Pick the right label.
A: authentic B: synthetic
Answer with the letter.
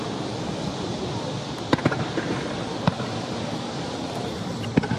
B